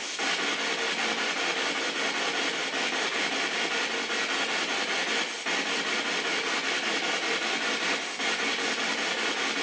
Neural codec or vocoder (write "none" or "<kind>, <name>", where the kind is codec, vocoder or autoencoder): none